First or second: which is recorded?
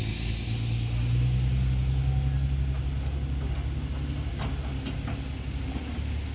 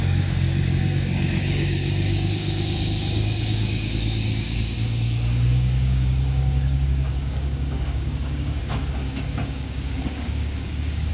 first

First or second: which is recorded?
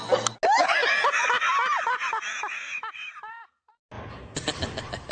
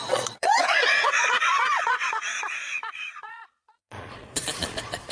first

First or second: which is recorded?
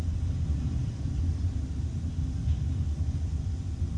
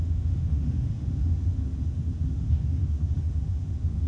first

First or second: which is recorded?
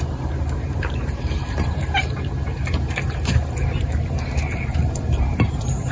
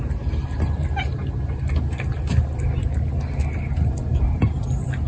second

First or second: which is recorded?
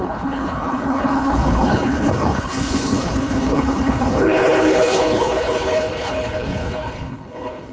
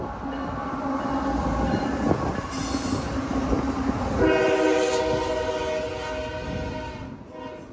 second